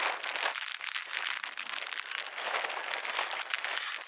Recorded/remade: recorded